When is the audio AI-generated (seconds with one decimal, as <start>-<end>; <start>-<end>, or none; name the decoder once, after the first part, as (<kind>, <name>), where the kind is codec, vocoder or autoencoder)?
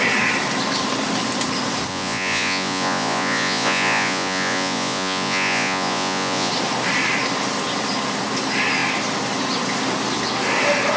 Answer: 1.9-6.5 (vocoder, Vocos)